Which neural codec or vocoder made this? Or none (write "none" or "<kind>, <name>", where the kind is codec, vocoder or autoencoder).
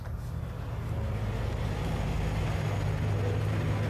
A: none